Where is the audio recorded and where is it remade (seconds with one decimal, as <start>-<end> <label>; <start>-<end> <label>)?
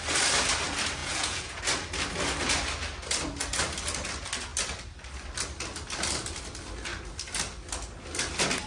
0.0-1.0 recorded; 1.0-1.6 remade; 1.6-8.7 recorded